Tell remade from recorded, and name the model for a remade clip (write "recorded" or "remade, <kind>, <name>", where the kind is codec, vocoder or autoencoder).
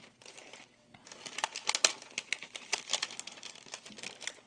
recorded